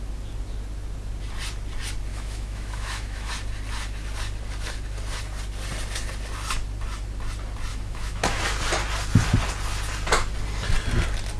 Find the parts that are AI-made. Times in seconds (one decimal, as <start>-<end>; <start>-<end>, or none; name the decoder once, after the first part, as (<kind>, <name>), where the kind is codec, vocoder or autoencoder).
2.1-3.3 (autoencoder, DAC-VAE); 7.7-8.4